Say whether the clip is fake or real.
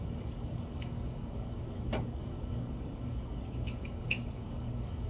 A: fake